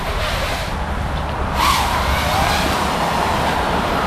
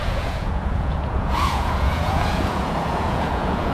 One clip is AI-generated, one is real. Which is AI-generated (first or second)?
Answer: second